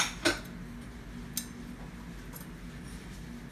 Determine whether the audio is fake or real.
real